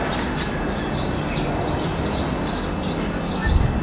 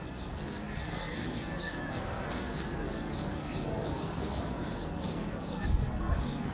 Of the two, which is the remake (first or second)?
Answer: second